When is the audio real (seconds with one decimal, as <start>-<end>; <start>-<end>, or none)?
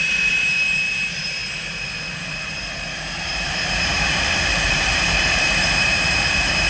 1.4-2.4